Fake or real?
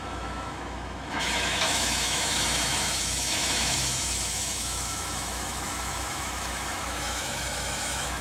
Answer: fake